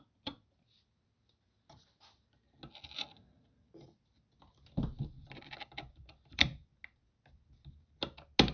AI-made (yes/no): no